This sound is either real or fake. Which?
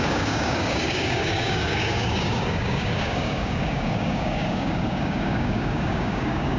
fake